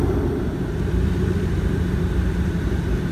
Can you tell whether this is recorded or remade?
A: remade